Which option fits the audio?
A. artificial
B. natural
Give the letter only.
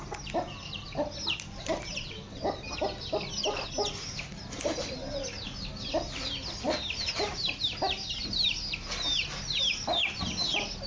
B